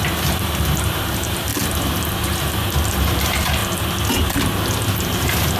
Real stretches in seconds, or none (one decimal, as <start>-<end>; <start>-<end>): 1.5-2.4; 3.6-5.0